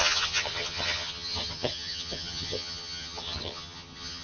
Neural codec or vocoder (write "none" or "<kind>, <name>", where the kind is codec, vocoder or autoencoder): vocoder, HiFi-GAN